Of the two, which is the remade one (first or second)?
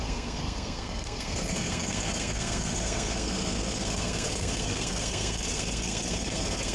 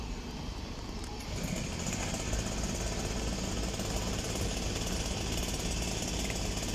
first